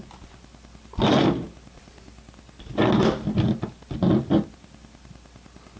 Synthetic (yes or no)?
no